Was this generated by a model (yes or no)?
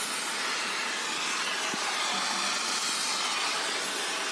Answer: no